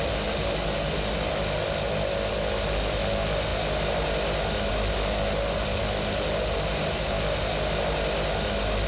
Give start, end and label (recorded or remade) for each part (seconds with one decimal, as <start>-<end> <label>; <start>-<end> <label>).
0.0-8.9 recorded